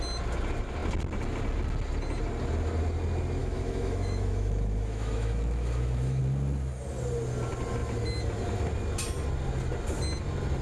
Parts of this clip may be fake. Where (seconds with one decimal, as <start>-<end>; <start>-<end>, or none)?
3.4-6.2